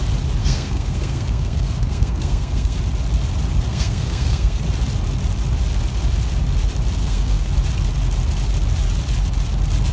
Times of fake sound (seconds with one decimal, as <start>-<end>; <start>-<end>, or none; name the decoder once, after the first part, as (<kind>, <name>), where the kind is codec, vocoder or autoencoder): 0.4-2.8 (codec, SNAC); 3.7-4.6; 7.0-7.5

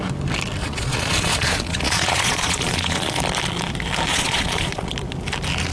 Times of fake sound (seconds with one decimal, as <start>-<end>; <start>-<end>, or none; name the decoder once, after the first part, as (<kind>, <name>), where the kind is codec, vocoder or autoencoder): 0.6-3.2 (vocoder, Vocos); 4.1-4.9

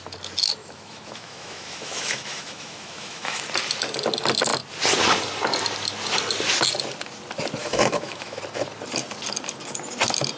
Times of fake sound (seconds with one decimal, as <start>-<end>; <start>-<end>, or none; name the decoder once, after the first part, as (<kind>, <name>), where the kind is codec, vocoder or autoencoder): 0.6-3.4 (autoencoder, DAC-VAE); 7.6-8.4

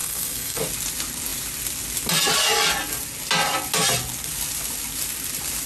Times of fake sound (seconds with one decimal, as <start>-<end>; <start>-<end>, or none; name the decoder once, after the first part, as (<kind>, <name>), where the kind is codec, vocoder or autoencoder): 0.0-0.6 (codec, SNAC)

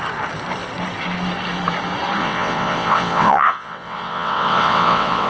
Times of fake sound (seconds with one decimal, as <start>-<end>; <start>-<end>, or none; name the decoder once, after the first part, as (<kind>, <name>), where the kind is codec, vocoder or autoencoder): 2.2-5.3 (vocoder, WaveNeXt)

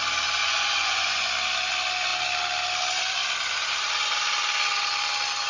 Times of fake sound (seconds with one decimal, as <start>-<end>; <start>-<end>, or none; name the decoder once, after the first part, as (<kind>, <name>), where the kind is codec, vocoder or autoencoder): 0.4-1.3 (vocoder, Vocos)

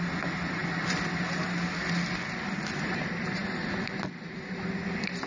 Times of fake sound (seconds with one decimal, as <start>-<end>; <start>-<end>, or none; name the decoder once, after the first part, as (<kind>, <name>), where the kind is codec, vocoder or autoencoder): none

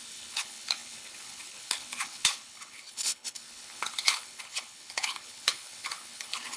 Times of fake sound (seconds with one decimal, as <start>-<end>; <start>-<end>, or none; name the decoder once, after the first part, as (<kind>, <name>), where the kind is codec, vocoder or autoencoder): 0.0-6.6 (codec, HILCodec)